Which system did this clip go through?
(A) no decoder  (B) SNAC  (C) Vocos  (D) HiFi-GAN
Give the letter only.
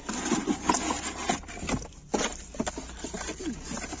A